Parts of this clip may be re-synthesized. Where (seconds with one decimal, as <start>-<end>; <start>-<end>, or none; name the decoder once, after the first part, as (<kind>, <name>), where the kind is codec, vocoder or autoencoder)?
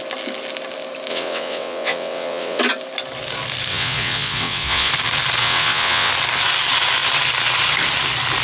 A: 1.1-2.6 (vocoder, WaveNeXt); 3.7-4.9; 5.4-6.1